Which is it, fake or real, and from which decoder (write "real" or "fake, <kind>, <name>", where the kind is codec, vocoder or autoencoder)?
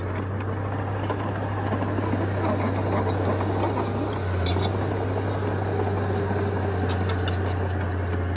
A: real